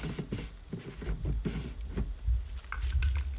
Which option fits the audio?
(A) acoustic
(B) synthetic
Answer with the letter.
A